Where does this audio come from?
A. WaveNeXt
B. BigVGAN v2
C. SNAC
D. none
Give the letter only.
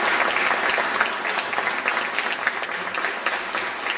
D